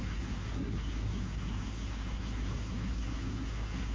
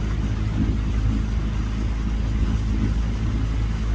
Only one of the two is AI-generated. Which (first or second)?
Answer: first